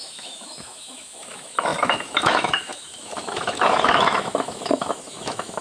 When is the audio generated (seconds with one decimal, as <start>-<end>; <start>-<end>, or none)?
0.0-5.6

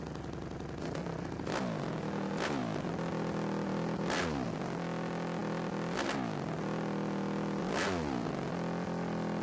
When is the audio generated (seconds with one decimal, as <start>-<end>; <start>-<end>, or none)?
none

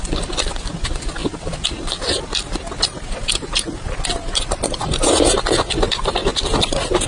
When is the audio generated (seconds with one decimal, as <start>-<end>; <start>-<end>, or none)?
none

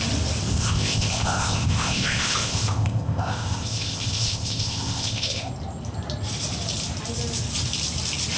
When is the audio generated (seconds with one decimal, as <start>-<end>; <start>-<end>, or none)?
0.5-5.5

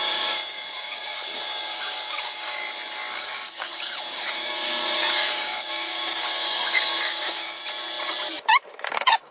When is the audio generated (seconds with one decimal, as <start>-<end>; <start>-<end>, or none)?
0.0-2.6; 3.1-7.6; 8.9-9.3

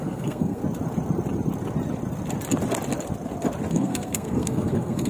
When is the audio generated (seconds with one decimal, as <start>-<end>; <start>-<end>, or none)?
0.0-0.6; 3.7-5.1

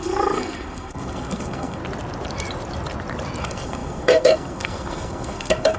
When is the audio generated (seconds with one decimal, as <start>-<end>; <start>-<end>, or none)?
0.0-1.8; 3.4-5.8

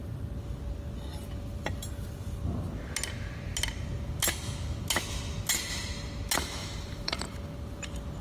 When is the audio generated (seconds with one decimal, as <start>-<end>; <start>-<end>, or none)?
6.6-7.4